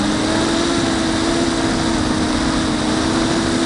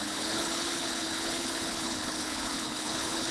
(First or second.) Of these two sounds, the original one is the first